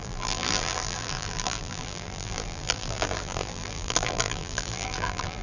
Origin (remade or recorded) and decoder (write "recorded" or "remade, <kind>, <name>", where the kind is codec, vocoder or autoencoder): remade, vocoder, BigVGAN v2